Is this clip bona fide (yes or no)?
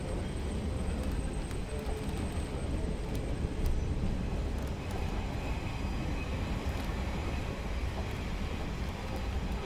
yes